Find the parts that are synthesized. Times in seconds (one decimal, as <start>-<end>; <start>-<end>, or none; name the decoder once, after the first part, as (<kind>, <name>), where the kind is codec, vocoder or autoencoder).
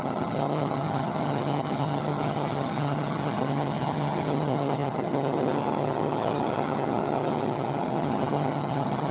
0.0-9.1 (vocoder, HiFi-GAN)